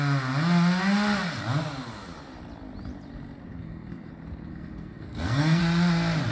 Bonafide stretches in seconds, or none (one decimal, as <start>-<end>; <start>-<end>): 0.0-3.5; 4.1-4.5; 5.6-6.3